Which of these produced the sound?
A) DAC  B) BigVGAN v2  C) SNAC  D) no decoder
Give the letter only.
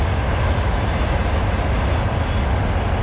D